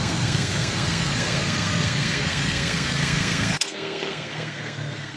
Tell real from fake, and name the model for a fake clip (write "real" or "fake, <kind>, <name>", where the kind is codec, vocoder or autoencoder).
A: fake, codec, SNAC